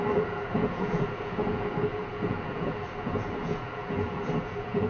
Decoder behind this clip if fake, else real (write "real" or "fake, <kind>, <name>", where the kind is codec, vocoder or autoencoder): fake, vocoder, Vocos